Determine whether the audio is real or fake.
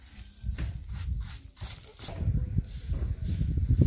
real